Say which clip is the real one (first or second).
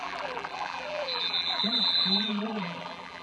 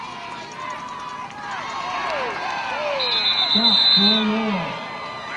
second